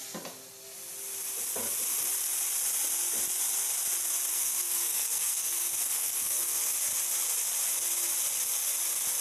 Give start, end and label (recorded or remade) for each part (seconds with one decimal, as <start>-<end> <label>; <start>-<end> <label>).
0.0-4.3 recorded; 4.3-6.6 remade; 6.6-9.2 recorded